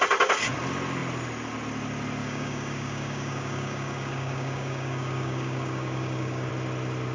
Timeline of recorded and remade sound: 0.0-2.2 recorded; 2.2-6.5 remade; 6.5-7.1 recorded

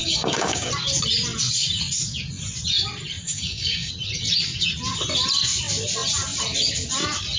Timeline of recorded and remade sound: 0.0-0.7 remade; 0.7-3.2 recorded; 3.2-3.9 remade; 3.9-7.4 recorded

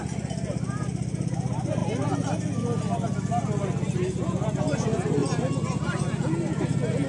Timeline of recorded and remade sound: 0.0-7.1 recorded

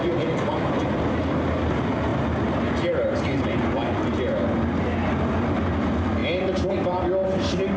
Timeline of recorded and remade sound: 0.0-7.8 recorded

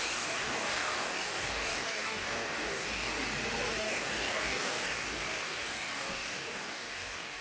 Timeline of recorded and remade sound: 0.0-3.1 remade; 3.1-3.8 recorded; 3.8-7.4 remade